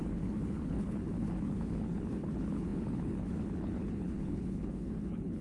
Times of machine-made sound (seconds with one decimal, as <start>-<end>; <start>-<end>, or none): 0.0-5.4